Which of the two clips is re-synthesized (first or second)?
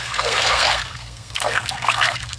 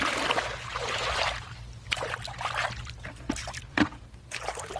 first